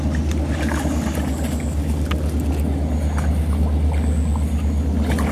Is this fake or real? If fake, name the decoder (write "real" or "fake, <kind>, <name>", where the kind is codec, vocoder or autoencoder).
real